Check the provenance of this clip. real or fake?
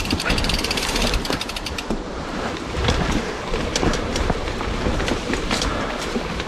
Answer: fake